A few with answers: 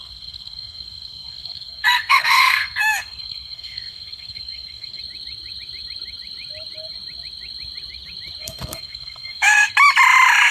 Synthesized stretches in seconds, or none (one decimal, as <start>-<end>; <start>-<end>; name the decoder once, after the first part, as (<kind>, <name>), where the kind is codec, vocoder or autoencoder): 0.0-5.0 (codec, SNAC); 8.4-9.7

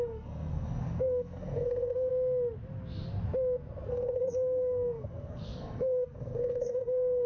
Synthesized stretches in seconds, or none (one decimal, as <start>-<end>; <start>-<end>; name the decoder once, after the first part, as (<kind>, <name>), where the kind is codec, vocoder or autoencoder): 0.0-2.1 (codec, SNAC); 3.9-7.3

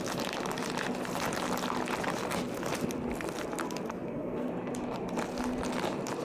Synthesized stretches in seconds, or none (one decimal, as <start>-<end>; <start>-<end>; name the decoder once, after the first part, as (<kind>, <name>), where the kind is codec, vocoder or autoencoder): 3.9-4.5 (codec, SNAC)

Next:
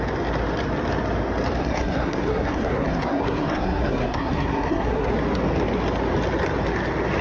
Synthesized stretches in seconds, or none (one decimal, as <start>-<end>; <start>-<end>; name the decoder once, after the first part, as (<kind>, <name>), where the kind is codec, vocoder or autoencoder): 1.6-5.1 (codec, SNAC)

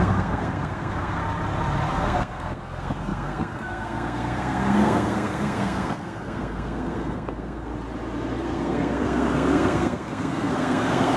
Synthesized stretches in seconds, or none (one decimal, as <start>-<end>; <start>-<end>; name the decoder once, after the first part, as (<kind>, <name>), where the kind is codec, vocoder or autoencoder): 0.0-1.2 (codec, SNAC); 1.9-7.7; 8.4-11.2